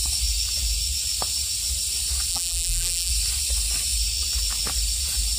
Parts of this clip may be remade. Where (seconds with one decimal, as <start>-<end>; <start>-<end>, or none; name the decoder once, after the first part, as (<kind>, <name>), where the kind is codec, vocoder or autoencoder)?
2.3-3.1 (vocoder, BigVGAN v2)